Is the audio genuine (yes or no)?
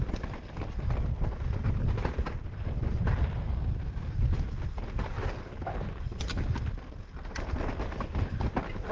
yes